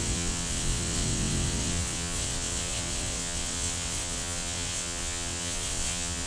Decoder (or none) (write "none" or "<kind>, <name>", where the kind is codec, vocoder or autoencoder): vocoder, WaveNeXt